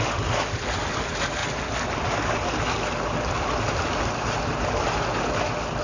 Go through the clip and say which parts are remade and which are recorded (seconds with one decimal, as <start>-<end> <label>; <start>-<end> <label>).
0.0-1.4 recorded; 1.4-1.9 remade; 1.9-5.8 recorded